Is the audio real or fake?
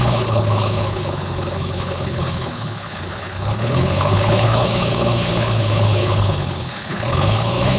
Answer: fake